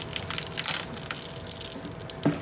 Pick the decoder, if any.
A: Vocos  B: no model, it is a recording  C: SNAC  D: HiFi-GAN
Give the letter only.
B